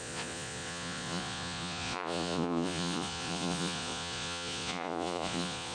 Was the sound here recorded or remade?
remade